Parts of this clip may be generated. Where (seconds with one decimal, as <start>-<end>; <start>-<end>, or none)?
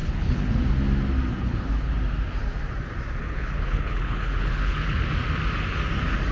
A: 0.0-0.6; 1.3-1.9; 3.2-5.0